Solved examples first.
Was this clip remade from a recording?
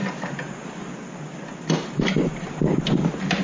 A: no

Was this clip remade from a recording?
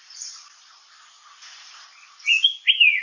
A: no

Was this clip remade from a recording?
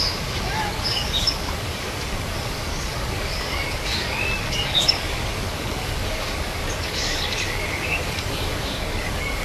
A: yes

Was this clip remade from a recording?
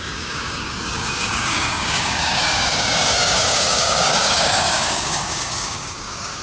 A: yes